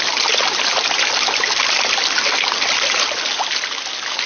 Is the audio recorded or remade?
recorded